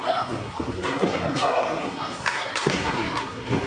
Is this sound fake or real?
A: fake